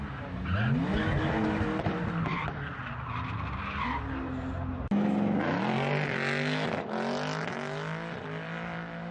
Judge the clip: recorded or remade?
recorded